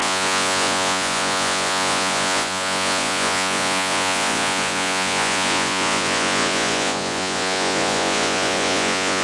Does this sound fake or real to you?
fake